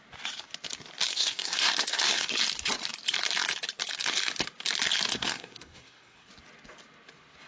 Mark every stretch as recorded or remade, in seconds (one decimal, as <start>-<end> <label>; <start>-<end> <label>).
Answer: 0.0-1.1 recorded; 1.1-2.3 remade; 2.3-5.1 recorded; 5.1-6.3 remade; 6.3-7.5 recorded